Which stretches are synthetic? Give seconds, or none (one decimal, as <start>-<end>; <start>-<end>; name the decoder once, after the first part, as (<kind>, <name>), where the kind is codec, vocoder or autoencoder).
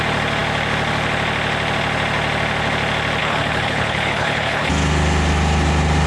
3.2-4.7 (codec, HILCodec)